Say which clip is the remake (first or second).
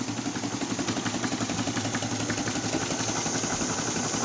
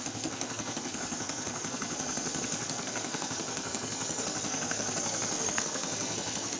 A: second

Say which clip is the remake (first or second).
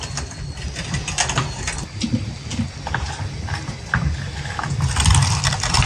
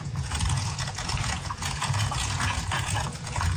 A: second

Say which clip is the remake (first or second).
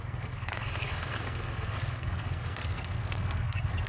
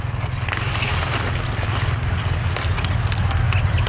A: first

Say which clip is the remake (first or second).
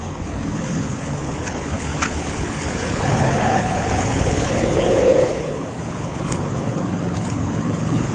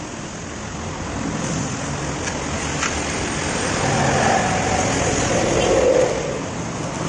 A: first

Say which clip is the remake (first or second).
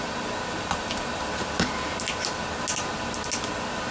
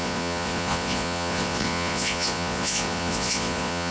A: second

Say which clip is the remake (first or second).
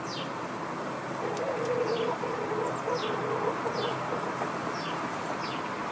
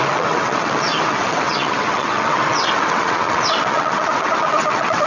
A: second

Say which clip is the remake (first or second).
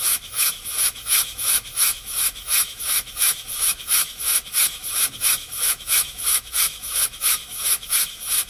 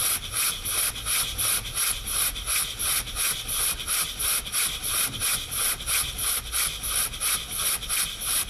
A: first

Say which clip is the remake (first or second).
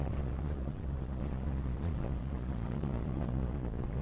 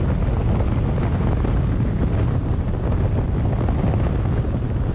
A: first